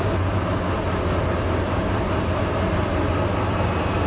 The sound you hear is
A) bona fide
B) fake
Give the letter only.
A